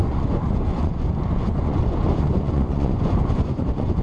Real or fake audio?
fake